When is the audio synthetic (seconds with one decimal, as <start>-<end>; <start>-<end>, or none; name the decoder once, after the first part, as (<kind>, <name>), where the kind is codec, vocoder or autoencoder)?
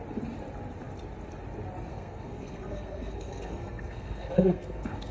1.9-5.1 (codec, SNAC)